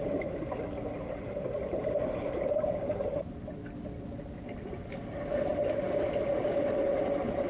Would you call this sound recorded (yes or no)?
yes